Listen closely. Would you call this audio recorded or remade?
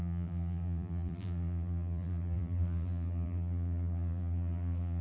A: remade